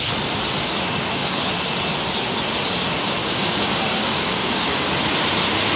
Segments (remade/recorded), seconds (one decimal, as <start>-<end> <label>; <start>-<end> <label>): 0.0-3.2 recorded; 3.2-4.9 remade; 4.9-5.8 recorded